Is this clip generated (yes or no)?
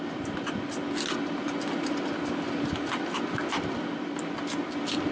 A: no